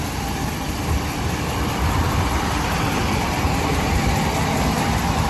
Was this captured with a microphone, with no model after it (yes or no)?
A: no